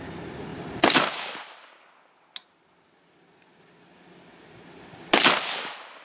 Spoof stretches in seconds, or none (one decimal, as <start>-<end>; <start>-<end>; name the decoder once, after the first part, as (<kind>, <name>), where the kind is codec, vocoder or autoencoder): none